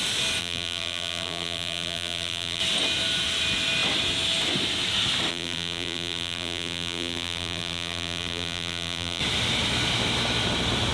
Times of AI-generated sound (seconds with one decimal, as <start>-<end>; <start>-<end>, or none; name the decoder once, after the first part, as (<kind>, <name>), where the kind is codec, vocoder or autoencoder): 0.4-2.6 (vocoder, BigVGAN v2); 5.3-9.2